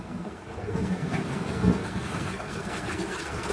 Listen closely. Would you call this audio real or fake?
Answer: fake